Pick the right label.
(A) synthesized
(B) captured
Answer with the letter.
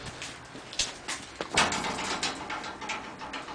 B